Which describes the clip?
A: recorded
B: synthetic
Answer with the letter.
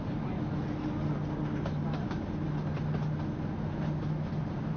A